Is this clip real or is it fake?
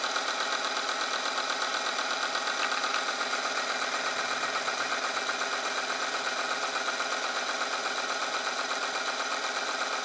real